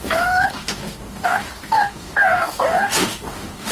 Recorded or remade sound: remade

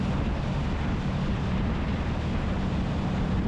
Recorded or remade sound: recorded